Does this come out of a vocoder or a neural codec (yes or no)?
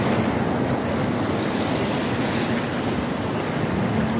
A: no